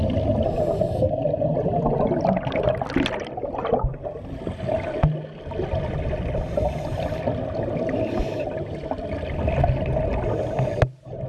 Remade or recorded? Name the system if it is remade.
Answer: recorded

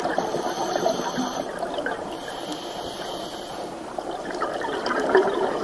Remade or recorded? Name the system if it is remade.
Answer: remade, vocoder, BigVGAN v2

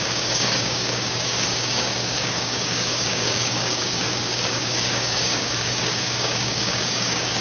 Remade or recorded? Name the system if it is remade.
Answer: remade, codec, DAC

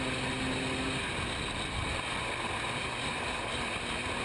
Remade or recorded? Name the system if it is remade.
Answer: recorded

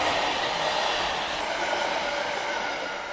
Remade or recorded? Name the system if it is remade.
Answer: recorded